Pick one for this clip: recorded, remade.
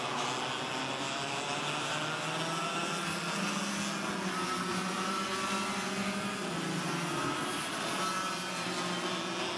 recorded